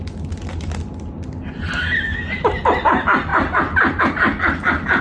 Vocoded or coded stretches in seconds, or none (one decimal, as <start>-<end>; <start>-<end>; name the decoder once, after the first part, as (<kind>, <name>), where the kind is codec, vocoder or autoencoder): none